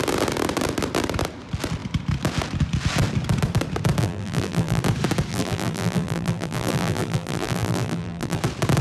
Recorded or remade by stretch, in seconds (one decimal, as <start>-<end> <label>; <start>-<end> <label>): 0.0-4.0 recorded; 4.0-4.8 remade; 4.8-5.3 recorded; 5.3-8.4 remade; 8.4-8.8 recorded